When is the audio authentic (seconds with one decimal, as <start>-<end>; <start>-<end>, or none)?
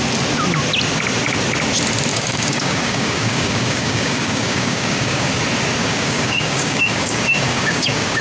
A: 0.0-2.1; 5.3-5.8